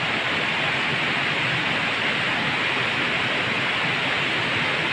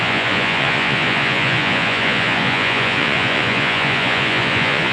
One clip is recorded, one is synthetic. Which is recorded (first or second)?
first